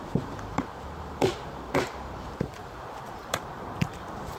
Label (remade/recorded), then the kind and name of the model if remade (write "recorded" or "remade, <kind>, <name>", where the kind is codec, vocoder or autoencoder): remade, vocoder, BigVGAN v2